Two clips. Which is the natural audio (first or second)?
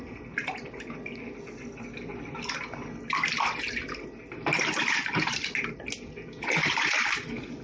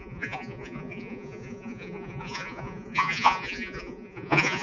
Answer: first